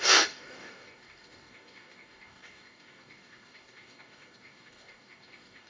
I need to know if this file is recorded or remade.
remade